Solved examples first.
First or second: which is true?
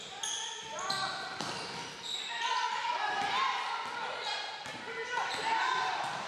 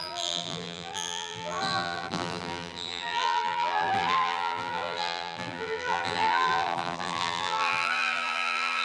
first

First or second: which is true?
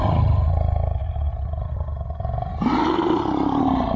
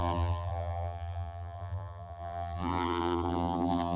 first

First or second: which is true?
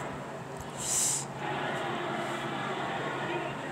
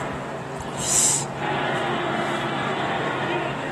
second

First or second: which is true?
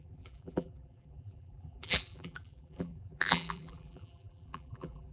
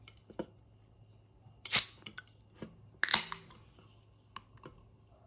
second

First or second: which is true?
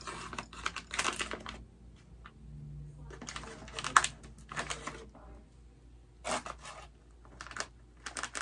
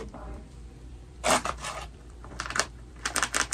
first